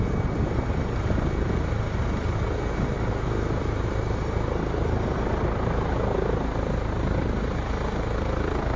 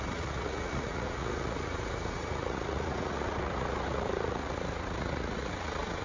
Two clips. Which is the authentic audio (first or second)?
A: first